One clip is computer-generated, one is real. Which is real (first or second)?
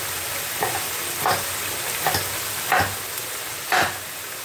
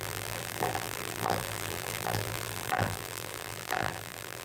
first